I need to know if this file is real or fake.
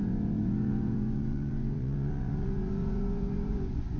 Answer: fake